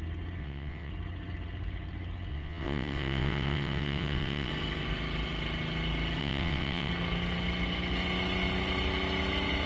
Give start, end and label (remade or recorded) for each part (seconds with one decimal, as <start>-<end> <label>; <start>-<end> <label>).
0.0-0.4 recorded; 0.4-0.9 remade; 0.9-2.3 recorded; 2.3-4.5 remade; 4.5-6.2 recorded; 6.2-6.9 remade; 6.9-9.7 recorded